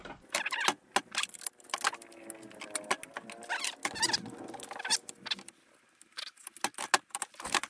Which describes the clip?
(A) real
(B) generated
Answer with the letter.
A